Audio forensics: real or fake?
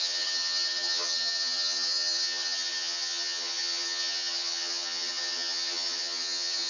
fake